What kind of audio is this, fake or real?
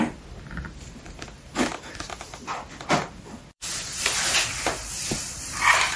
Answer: fake